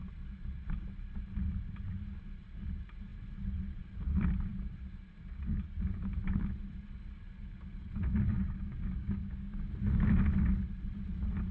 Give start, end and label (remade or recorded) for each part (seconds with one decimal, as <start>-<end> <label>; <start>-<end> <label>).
0.0-8.3 recorded; 8.3-9.7 remade; 9.7-11.5 recorded